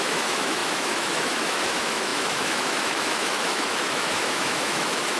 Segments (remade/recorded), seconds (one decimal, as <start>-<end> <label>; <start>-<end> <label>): 0.0-5.2 remade